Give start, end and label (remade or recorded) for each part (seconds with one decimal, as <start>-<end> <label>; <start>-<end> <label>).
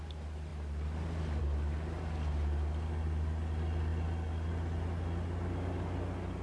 0.0-6.4 recorded